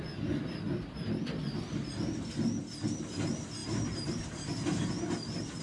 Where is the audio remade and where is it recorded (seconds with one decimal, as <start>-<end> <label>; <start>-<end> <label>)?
0.0-3.6 recorded; 3.6-5.0 remade; 5.0-5.6 recorded